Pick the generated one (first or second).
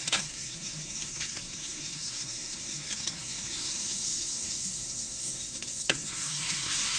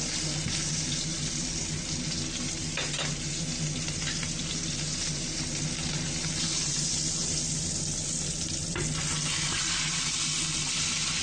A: first